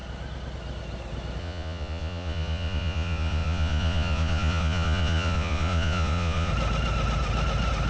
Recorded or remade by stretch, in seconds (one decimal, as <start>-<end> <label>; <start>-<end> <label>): 0.0-1.4 recorded; 1.4-6.5 remade; 6.5-7.9 recorded